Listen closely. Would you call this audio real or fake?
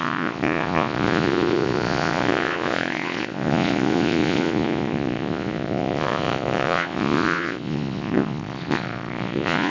fake